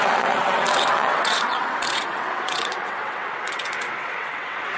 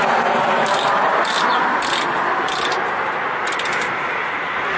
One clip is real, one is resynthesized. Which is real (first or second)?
second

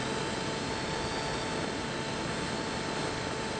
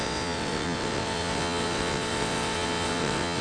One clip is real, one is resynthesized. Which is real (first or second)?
first